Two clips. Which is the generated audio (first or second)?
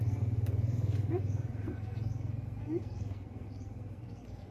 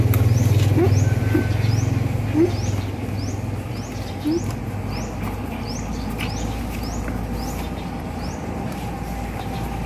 first